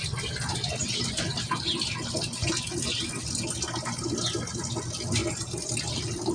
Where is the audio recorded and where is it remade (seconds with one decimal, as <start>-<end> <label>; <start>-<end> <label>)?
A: 0.0-0.5 recorded; 0.5-1.3 remade; 1.3-6.3 recorded